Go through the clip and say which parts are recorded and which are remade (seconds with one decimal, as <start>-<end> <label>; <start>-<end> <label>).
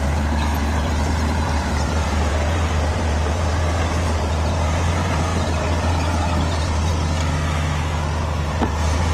0.0-6.9 remade; 6.9-8.5 recorded; 8.5-9.1 remade